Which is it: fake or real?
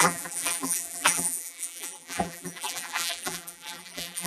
fake